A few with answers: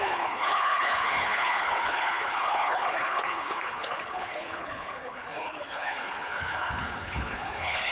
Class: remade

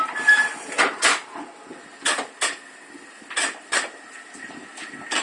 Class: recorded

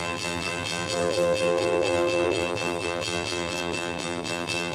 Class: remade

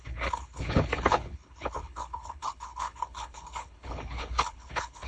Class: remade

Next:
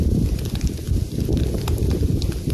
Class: recorded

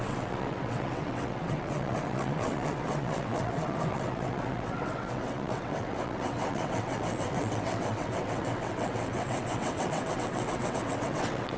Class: remade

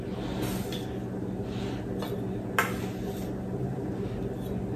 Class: recorded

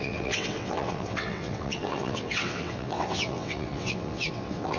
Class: remade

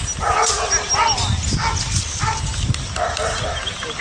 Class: recorded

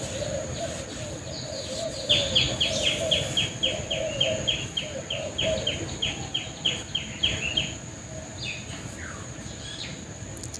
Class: recorded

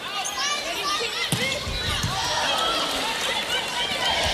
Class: recorded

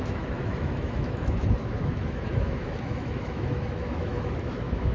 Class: remade